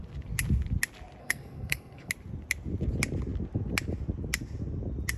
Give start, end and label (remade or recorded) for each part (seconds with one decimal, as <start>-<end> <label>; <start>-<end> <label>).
0.0-1.2 recorded; 1.2-2.1 remade; 2.1-5.2 recorded